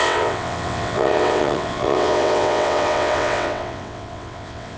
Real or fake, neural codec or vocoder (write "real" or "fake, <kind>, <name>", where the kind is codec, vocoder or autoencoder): fake, vocoder, WaveNeXt